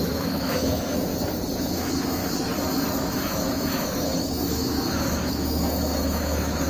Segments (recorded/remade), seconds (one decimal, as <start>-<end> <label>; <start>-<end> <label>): 0.0-1.1 remade; 1.1-1.6 recorded; 1.6-2.2 remade; 2.2-3.1 recorded; 3.1-6.7 remade